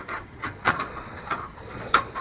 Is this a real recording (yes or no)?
no